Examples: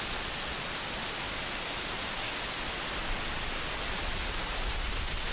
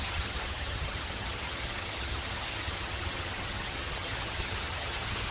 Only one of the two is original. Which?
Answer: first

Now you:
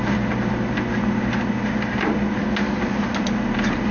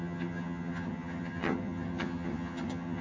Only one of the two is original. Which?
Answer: first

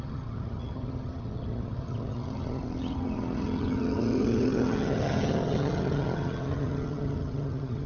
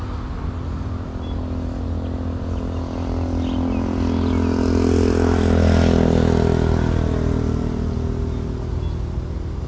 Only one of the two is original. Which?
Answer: second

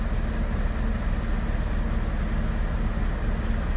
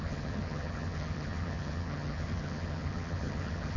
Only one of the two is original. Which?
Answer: first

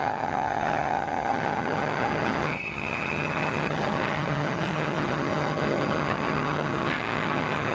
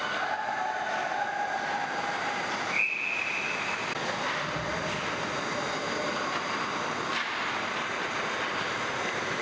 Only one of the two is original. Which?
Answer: second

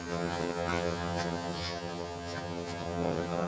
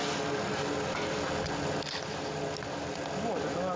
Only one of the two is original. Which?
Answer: second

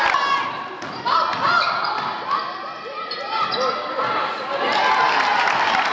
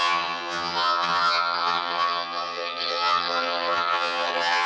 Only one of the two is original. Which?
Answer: first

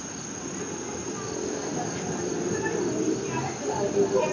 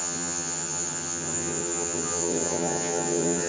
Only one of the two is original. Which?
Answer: first